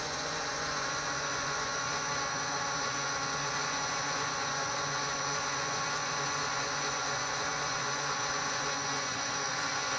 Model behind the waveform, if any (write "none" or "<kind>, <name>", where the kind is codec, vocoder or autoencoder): vocoder, Vocos